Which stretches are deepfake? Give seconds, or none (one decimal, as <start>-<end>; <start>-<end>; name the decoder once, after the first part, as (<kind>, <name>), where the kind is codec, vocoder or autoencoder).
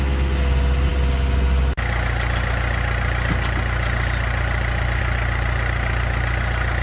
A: none